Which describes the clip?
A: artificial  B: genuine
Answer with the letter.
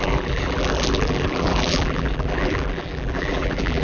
A